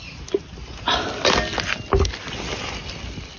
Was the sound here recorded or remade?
recorded